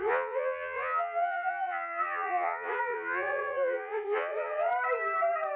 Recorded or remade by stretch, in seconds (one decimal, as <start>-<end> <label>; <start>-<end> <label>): 0.0-4.7 remade; 4.7-5.6 recorded